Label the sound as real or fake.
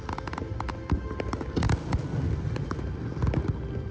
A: real